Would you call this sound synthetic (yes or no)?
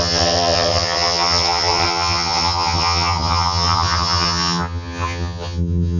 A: yes